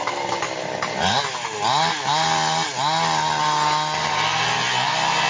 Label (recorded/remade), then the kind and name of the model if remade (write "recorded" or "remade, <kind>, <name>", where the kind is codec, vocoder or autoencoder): recorded